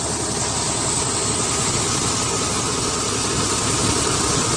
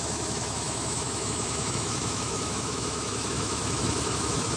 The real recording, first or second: first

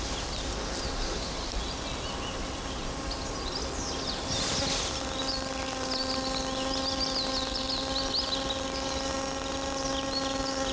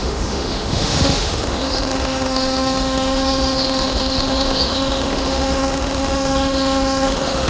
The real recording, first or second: first